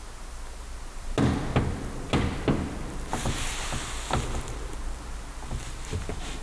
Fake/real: real